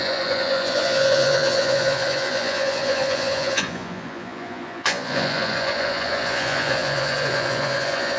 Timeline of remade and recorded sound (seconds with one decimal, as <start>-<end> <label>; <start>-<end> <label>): 0.0-8.2 remade